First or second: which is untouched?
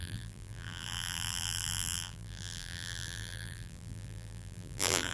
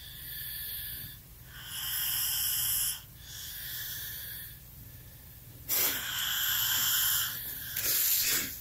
second